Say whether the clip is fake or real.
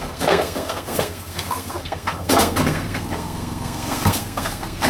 fake